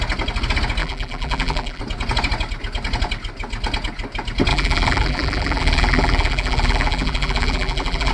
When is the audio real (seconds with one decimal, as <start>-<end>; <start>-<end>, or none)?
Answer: 0.0-0.8; 1.8-4.5